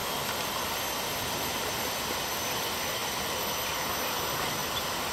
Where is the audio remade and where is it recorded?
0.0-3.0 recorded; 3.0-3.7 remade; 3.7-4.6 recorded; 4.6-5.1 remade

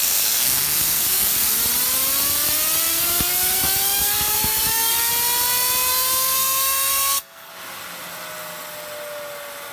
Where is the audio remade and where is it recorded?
0.0-1.6 remade; 1.6-2.9 recorded; 2.9-5.1 remade; 5.1-5.9 recorded; 5.9-7.5 remade; 7.5-9.7 recorded

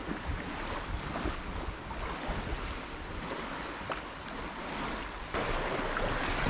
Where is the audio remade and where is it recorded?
0.0-6.5 recorded

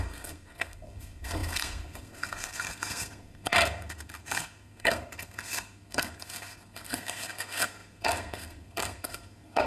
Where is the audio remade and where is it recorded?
0.0-9.7 remade

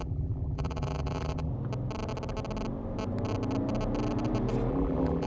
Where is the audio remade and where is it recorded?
0.0-1.5 remade; 1.5-4.7 recorded; 4.7-5.3 remade

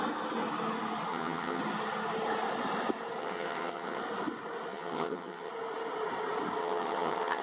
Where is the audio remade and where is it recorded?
0.0-1.1 recorded; 1.1-1.6 remade; 1.6-3.2 recorded; 3.2-4.0 remade; 4.0-4.7 recorded; 4.7-5.5 remade; 5.5-6.6 recorded; 6.6-7.4 remade

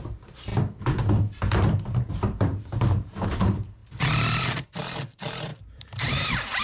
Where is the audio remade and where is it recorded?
0.0-0.5 remade; 0.5-1.4 recorded; 1.4-3.8 remade; 3.8-4.4 recorded; 4.4-6.6 remade

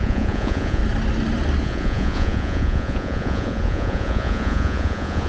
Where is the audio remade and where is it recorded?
0.0-0.8 remade; 0.8-1.6 recorded; 1.6-5.3 remade